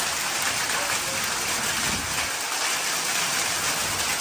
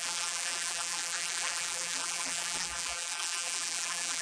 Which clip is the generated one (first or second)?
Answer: second